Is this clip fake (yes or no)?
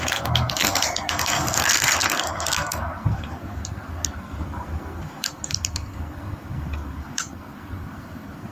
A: yes